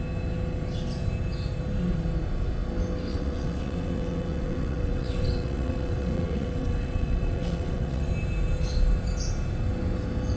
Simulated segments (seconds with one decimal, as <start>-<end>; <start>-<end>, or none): 3.1-8.1